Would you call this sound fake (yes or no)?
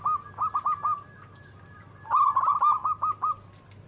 no